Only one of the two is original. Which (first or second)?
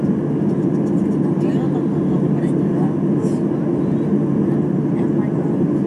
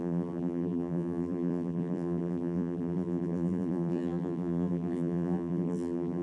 first